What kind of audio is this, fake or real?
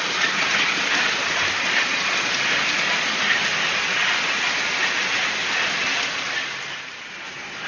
real